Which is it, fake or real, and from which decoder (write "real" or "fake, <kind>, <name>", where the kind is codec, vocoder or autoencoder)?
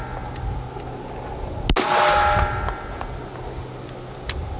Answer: real